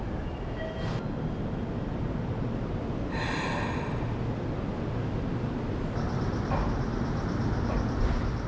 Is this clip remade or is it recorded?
remade